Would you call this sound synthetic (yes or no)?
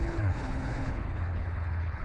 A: yes